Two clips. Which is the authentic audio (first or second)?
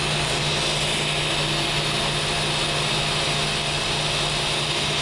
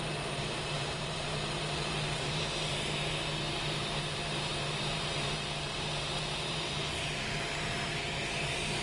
first